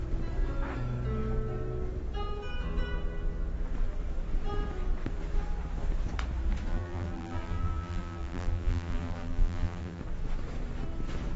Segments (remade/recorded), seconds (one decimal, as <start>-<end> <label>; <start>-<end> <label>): 0.0-6.7 recorded; 6.7-10.0 remade; 10.0-11.4 recorded